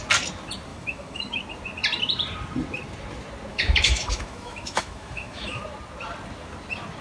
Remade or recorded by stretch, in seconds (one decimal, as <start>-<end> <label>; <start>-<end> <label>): 0.0-0.7 recorded; 0.7-1.4 remade; 1.4-3.5 recorded; 3.5-5.6 remade; 5.6-7.0 recorded